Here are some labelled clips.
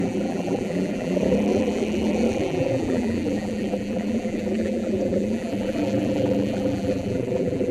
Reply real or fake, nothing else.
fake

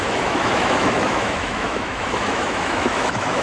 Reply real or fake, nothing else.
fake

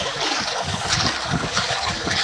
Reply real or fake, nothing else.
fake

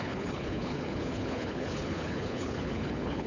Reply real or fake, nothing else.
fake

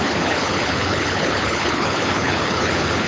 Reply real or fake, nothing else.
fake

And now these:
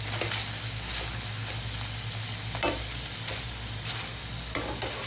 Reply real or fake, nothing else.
real